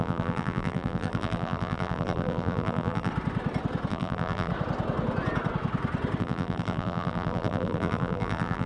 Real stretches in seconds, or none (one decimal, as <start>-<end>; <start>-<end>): 3.1-3.9; 4.5-6.2